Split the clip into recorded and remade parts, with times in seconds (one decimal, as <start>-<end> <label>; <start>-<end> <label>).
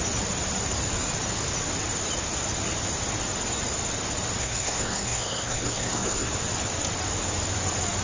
0.0-4.4 recorded; 4.4-6.3 remade; 6.3-8.0 recorded